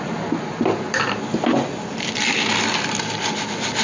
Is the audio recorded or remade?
recorded